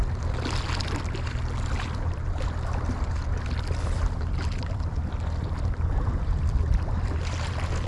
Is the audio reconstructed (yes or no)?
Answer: no